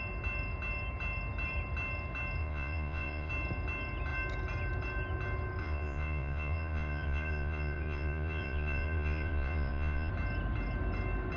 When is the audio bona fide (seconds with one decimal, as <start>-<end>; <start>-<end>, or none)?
0.0-2.4; 3.3-5.6; 10.1-11.4